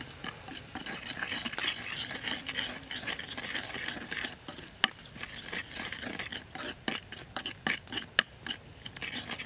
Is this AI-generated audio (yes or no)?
no